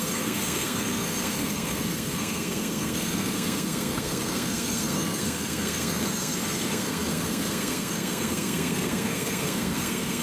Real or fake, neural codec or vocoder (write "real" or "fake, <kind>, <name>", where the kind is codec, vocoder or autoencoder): fake, codec, SNAC